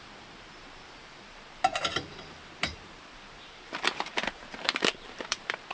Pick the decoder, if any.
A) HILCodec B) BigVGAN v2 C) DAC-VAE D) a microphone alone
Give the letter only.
B